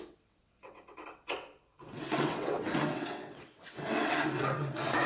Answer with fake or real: fake